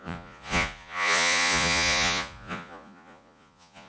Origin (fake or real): fake